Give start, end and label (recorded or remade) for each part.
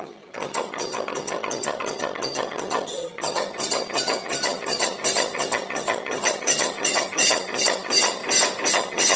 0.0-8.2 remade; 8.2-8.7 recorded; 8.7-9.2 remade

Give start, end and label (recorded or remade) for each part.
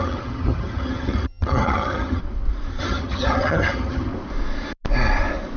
0.0-2.2 remade; 2.2-2.8 recorded; 2.8-4.1 remade; 4.1-5.6 recorded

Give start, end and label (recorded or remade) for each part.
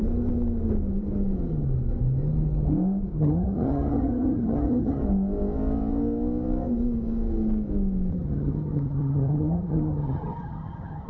0.0-3.2 recorded; 3.2-5.0 remade; 5.0-8.1 recorded; 8.1-11.1 remade